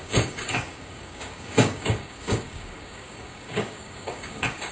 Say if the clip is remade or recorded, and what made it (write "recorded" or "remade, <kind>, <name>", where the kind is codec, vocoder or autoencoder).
remade, codec, DAC